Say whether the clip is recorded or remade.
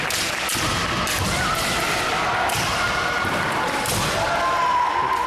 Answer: recorded